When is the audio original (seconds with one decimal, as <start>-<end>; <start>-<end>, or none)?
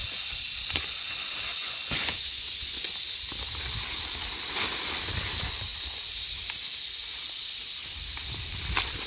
0.0-1.6; 2.9-9.1